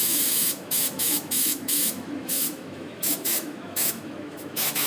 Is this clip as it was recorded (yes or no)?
no